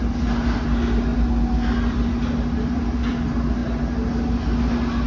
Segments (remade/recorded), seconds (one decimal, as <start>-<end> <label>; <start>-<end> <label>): 0.0-5.1 recorded